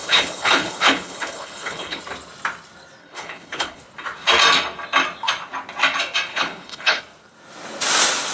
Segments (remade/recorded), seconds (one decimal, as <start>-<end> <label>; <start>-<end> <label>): 0.0-2.0 remade; 2.0-3.0 recorded; 3.0-3.8 remade; 3.8-6.3 recorded; 6.3-7.0 remade; 7.0-8.3 recorded